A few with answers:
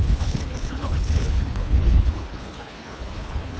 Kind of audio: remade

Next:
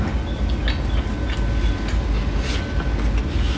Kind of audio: recorded